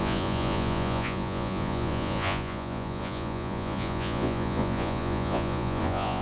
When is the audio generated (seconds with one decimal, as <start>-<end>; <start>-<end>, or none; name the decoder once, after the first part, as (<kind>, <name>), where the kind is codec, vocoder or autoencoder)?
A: 0.0-6.2 (vocoder, Vocos)